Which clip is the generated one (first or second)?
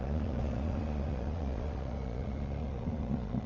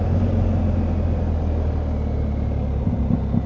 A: first